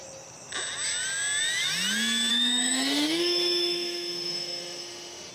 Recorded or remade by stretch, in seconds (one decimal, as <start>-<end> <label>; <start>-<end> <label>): 0.0-2.3 recorded; 2.3-5.3 remade